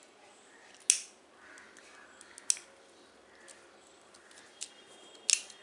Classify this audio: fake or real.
real